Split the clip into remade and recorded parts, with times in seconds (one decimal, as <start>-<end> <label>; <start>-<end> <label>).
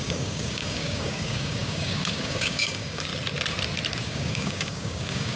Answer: 0.0-3.1 remade; 3.1-4.0 recorded; 4.0-5.4 remade